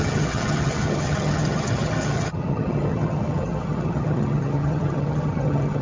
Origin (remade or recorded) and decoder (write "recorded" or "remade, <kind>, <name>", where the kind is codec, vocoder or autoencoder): remade, vocoder, HiFi-GAN